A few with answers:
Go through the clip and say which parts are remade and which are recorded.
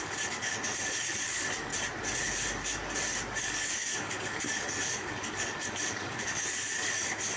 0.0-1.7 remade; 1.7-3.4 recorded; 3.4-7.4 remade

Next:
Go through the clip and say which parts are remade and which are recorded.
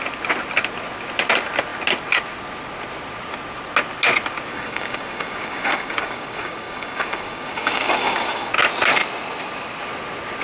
0.0-4.5 recorded; 4.5-8.5 remade; 8.5-10.4 recorded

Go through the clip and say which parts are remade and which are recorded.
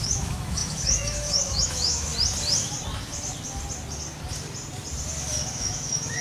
0.0-2.1 remade; 2.1-5.5 recorded; 5.5-6.2 remade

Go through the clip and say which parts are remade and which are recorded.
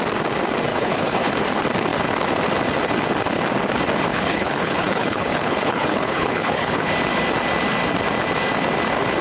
0.0-0.7 recorded; 0.7-1.3 remade; 1.3-4.1 recorded; 4.1-6.9 remade; 6.9-9.2 recorded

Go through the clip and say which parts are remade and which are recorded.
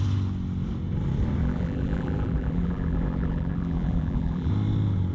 0.0-1.4 recorded; 1.4-4.5 remade; 4.5-5.1 recorded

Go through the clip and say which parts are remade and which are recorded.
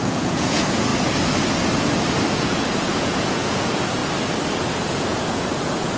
0.0-0.9 remade; 0.9-2.4 recorded; 2.4-4.0 remade; 4.0-4.8 recorded; 4.8-6.0 remade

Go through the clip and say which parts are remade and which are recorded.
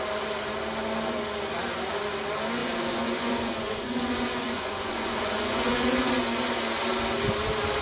0.0-2.6 recorded; 2.6-6.1 remade; 6.1-7.8 recorded